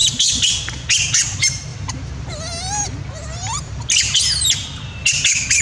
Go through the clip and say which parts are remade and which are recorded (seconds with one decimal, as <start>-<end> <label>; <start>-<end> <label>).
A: 0.0-0.5 remade; 0.5-5.6 recorded

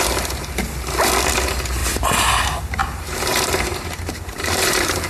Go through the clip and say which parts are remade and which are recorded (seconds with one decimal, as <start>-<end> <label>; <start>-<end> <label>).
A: 0.0-2.8 recorded; 2.8-5.1 remade

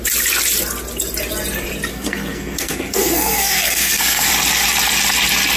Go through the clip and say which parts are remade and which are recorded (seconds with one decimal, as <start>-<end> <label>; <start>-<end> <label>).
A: 0.0-1.9 recorded; 1.9-4.3 remade; 4.3-5.6 recorded

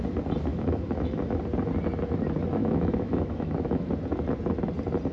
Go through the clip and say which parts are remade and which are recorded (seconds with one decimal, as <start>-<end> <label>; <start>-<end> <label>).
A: 0.0-0.5 recorded; 0.5-1.4 remade; 1.4-2.6 recorded; 2.6-3.9 remade; 3.9-5.1 recorded

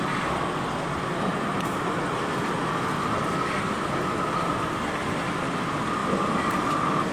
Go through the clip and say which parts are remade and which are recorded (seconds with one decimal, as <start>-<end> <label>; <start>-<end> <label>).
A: 0.0-1.3 recorded; 1.3-2.0 remade; 2.0-7.1 recorded

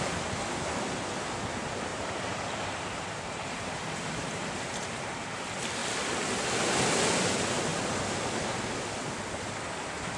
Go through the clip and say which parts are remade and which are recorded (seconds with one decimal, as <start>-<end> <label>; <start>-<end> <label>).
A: 0.0-1.9 recorded; 1.9-5.1 remade; 5.1-10.2 recorded

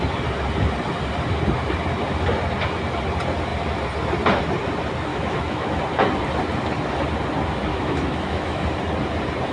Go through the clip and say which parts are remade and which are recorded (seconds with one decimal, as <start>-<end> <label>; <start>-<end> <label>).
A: 0.0-5.1 recorded; 5.1-5.8 remade; 5.8-7.7 recorded; 7.7-8.6 remade; 8.6-9.5 recorded